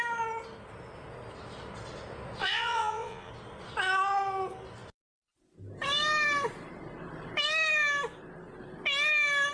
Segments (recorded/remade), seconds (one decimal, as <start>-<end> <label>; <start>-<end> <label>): 0.0-2.4 recorded; 2.4-3.3 remade; 3.3-9.5 recorded